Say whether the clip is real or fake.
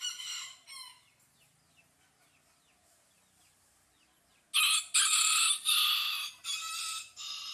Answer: real